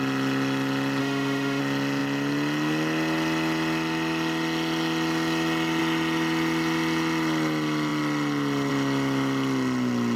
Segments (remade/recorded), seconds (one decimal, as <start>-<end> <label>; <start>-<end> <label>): 0.0-1.0 recorded; 1.0-1.6 remade; 1.6-10.2 recorded